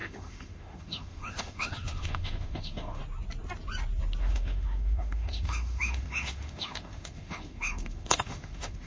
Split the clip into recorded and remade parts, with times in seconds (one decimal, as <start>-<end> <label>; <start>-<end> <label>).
0.0-3.0 remade; 3.0-4.2 recorded; 4.2-8.9 remade